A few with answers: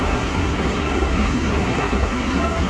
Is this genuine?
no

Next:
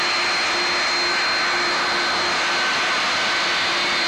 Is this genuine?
yes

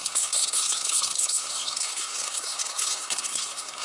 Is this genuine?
no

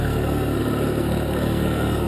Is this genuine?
no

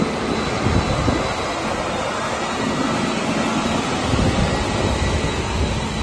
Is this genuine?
yes